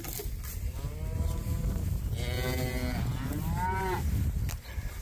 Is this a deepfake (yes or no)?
no